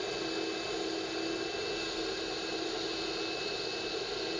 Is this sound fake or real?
real